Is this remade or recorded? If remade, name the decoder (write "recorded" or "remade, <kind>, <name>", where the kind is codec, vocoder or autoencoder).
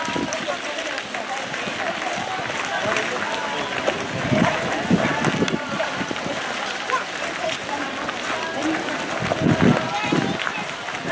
recorded